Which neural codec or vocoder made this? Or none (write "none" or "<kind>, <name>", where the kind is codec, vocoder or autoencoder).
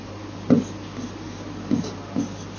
none